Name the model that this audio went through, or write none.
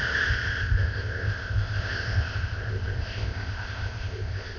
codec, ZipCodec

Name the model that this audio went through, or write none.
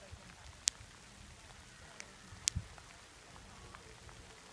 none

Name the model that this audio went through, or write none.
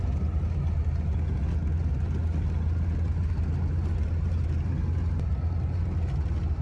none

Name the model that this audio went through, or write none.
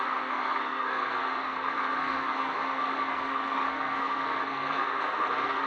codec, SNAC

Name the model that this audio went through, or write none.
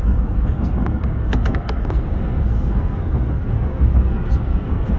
codec, SNAC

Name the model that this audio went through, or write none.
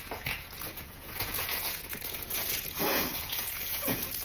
vocoder, Vocos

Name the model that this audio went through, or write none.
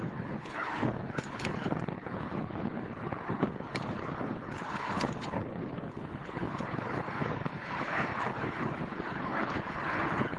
codec, HILCodec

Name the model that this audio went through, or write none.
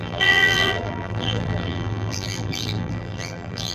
vocoder, BigVGAN v2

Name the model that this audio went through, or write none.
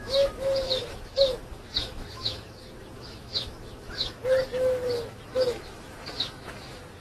autoencoder, DAC-VAE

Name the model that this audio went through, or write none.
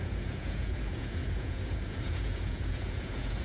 vocoder, Vocos